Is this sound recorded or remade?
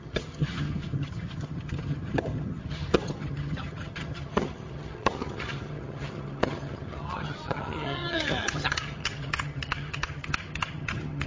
remade